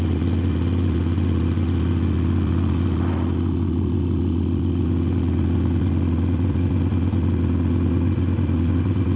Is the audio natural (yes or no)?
no